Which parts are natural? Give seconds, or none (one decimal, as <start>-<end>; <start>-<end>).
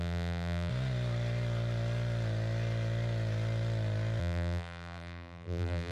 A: 0.7-4.2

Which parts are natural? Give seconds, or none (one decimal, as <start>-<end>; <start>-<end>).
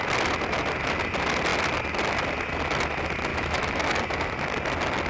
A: 0.0-3.3; 4.0-5.1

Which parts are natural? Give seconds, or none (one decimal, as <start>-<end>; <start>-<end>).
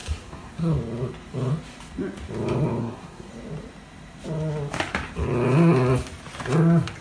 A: 0.6-2.8; 3.3-7.0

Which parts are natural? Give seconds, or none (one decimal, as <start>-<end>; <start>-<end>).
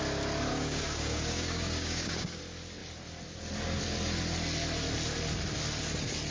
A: 0.0-0.5; 2.4-6.3